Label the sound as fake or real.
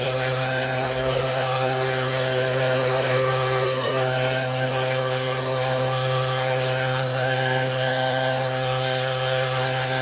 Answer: fake